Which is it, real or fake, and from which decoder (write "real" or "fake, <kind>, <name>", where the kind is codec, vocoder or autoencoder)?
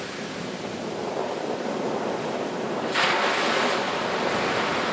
real